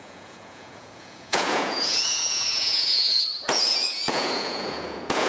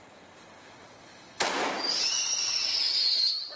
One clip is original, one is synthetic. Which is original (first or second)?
second